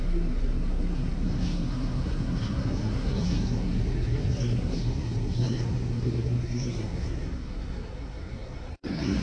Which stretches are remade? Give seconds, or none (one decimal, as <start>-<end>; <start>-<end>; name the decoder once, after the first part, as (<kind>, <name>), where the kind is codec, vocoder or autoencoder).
0.0-9.2 (codec, SNAC)